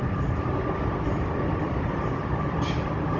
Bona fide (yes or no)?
no